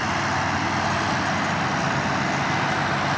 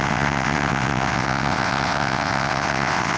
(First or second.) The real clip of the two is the first